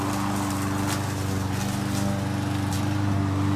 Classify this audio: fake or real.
real